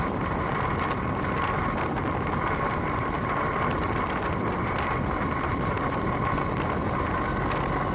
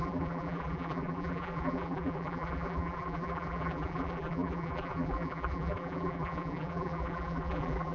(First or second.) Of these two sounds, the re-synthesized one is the second